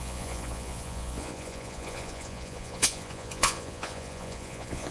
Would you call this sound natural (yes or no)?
no